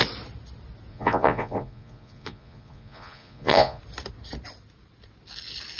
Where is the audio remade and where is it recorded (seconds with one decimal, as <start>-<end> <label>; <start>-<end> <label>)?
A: 0.0-0.9 recorded; 0.9-3.8 remade; 3.8-5.8 recorded